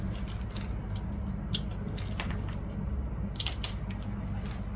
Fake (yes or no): no